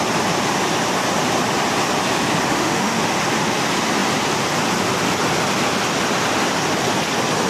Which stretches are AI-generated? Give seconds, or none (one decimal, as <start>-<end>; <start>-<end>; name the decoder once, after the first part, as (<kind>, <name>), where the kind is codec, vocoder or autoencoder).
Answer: 2.5-3.0 (autoencoder, DAC-VAE)